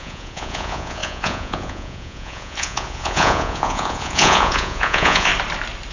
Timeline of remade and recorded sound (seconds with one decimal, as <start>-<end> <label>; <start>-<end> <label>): 0.0-5.3 remade; 5.3-5.9 recorded